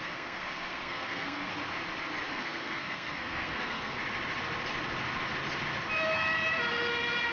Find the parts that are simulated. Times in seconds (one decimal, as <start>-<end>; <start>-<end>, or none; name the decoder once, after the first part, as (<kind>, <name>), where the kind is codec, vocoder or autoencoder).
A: 0.0-1.5 (codec, SNAC); 2.3-4.0